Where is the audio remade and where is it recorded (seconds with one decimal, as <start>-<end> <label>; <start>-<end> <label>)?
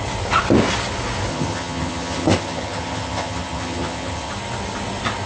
0.0-1.3 recorded; 1.3-4.3 remade; 4.3-5.3 recorded